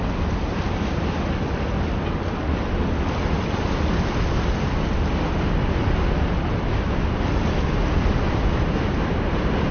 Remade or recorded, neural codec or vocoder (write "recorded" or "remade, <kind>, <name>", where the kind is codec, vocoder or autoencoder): recorded